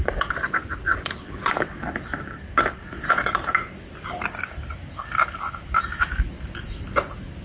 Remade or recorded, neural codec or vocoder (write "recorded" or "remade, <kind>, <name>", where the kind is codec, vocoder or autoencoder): recorded